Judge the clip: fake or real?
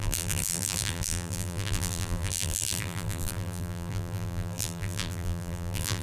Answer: fake